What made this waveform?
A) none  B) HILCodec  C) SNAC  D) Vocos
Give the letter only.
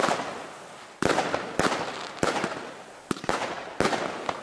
A